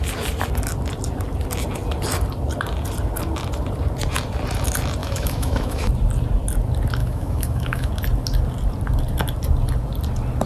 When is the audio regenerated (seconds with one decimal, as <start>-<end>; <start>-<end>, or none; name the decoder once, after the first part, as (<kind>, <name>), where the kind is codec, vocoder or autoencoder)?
5.0-5.9 (autoencoder, DAC-VAE); 7.0-7.9